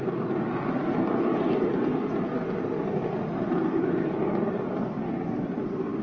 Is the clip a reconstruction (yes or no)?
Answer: no